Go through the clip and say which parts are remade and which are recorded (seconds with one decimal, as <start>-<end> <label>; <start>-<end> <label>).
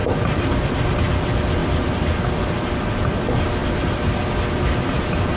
0.0-0.8 remade; 0.8-1.6 recorded; 1.6-3.1 remade; 3.1-5.4 recorded